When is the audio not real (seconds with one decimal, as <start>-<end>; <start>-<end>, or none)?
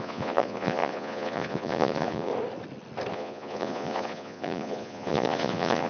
0.0-2.3; 3.1-5.9